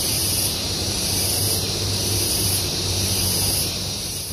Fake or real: fake